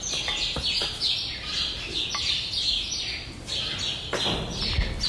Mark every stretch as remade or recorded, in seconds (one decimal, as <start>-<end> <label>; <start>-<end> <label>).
0.0-5.1 recorded